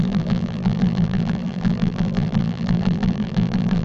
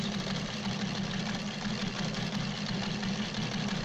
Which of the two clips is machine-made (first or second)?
first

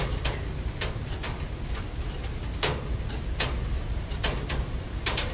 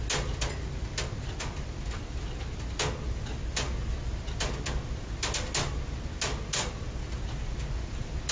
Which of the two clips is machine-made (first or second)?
first